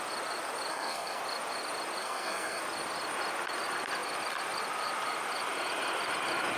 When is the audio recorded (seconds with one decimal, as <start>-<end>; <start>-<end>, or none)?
0.0-0.7; 1.2-2.0; 2.6-6.6